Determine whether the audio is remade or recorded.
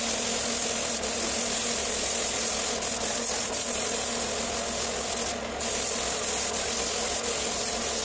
recorded